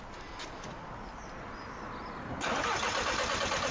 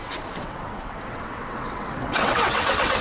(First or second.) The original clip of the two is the first